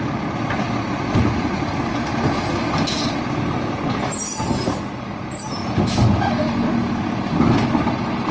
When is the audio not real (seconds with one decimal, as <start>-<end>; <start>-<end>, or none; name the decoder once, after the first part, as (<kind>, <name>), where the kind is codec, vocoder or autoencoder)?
none